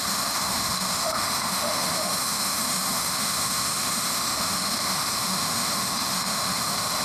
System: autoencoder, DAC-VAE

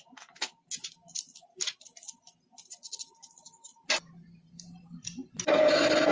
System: none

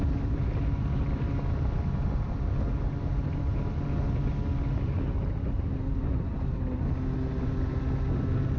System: none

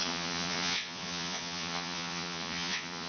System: vocoder, Vocos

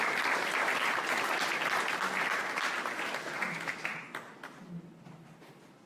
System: none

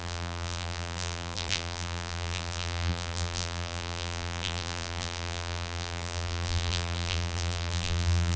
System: vocoder, BigVGAN v2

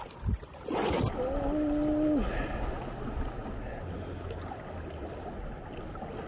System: none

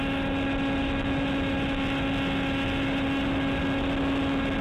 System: none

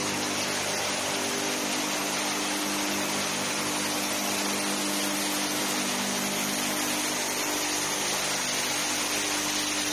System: none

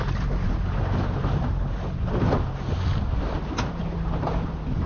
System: none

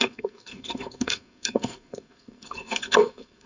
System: codec, SNAC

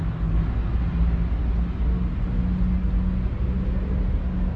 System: none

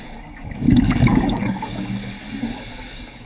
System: codec, DAC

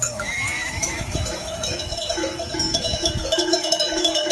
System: autoencoder, DAC-VAE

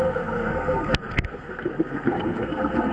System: codec, SNAC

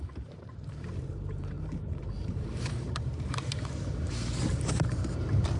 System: vocoder, BigVGAN v2